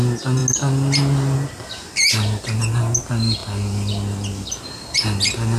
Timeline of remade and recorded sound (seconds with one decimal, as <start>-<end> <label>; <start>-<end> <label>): 0.0-5.6 recorded